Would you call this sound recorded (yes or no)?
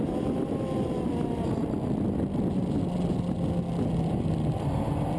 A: yes